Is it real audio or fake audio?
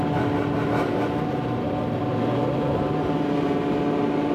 real